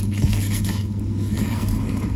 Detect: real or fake fake